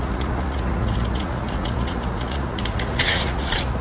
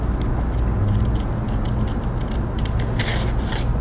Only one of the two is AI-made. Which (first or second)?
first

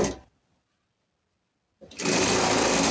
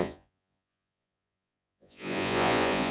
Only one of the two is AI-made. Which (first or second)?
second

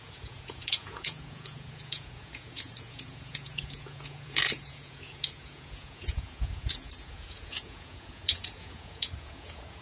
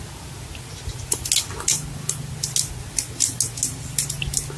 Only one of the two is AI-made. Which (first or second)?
first